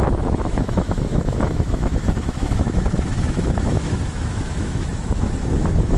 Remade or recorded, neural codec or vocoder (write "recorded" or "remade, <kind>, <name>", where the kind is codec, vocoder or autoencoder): remade, autoencoder, DAC-VAE